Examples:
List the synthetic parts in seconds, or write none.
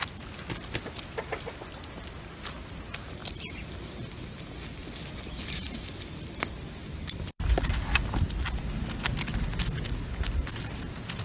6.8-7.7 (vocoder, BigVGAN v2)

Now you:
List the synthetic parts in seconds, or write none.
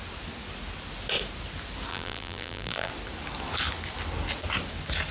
1.9-2.9 (vocoder, BigVGAN v2)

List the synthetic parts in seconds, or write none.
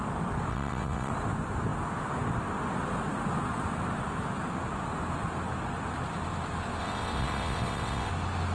0.5-1.1 (vocoder, WaveNeXt); 6.8-8.1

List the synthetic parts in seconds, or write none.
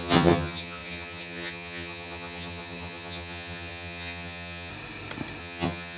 0.0-4.7 (vocoder, HiFi-GAN); 5.4-6.0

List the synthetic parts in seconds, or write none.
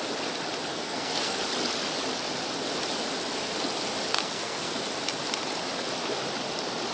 0.7-1.4 (codec, SNAC); 4.1-4.8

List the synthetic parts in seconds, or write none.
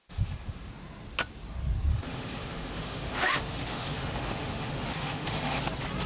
0.0-0.7 (autoencoder, DAC-VAE); 1.9-5.6